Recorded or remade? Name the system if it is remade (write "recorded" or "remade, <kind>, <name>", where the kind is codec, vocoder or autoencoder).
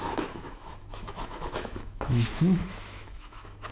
remade, autoencoder, DAC-VAE